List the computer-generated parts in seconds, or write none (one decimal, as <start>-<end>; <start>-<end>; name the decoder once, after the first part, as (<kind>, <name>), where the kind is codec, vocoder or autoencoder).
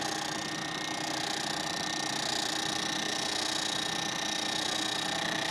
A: none